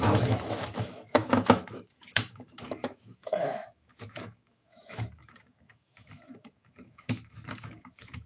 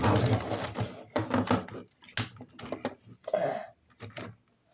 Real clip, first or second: second